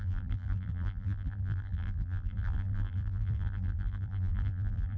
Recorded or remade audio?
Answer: remade